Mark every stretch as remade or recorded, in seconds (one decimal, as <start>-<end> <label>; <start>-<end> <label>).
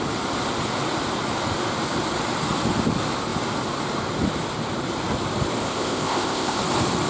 0.0-5.6 recorded; 5.6-6.6 remade; 6.6-7.1 recorded